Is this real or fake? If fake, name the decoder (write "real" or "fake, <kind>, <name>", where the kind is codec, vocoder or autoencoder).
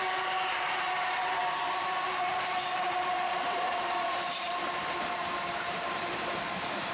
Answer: fake, vocoder, BigVGAN v2